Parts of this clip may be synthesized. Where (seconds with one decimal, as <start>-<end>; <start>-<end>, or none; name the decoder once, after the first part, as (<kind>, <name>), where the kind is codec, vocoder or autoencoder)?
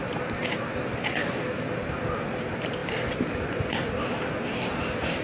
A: none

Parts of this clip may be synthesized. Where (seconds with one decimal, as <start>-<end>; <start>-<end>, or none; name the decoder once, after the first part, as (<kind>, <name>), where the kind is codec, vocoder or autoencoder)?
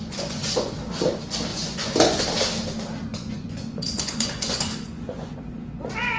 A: 0.0-0.7 (vocoder, Vocos); 1.5-2.2; 3.1-5.4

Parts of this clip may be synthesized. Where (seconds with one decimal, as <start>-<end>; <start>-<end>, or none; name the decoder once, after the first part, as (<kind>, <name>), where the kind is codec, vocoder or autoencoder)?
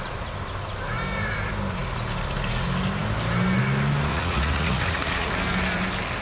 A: 4.1-5.3 (vocoder, Vocos)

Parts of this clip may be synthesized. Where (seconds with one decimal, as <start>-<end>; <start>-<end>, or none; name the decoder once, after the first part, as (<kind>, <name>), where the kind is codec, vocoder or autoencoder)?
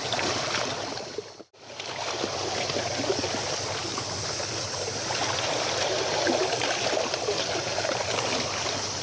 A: none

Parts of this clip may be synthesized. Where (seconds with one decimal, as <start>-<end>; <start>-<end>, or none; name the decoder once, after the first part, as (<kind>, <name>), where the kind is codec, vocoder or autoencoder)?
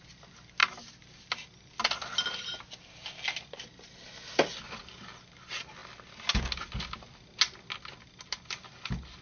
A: none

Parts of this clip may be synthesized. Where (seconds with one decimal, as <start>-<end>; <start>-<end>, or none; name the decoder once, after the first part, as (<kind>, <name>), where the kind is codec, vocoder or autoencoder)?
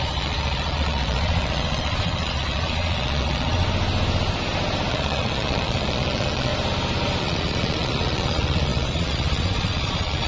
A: 0.0-3.6 (vocoder, Vocos); 4.9-6.5; 7.2-10.3